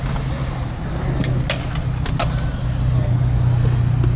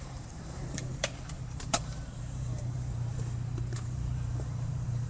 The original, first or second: first